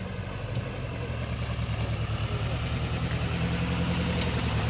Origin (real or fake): real